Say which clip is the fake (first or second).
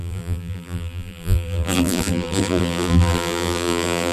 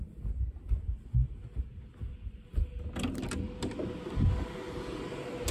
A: first